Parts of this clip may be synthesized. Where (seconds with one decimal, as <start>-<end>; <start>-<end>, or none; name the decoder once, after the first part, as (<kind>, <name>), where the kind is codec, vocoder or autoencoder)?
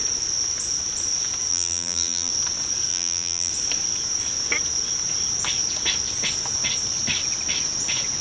1.5-2.3 (vocoder, BigVGAN v2); 2.9-3.5